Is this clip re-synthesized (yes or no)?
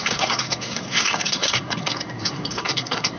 yes